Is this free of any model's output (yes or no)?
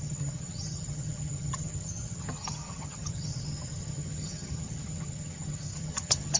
no